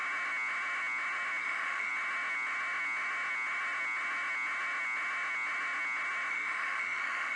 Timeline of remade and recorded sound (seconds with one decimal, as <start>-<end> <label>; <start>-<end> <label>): 0.0-1.4 recorded; 1.4-1.9 remade; 1.9-6.3 recorded; 6.3-7.4 remade